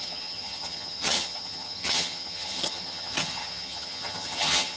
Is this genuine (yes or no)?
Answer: no